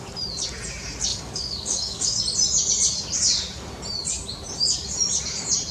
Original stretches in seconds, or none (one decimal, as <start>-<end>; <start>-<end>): 0.0-1.1; 2.2-5.7